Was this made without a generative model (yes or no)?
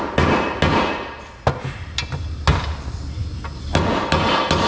yes